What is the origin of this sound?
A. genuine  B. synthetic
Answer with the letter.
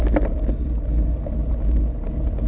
A